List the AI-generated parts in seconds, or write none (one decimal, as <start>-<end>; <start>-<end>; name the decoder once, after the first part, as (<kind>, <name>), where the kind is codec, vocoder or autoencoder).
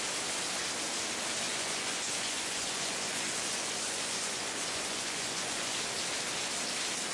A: 1.5-5.8 (vocoder, Vocos)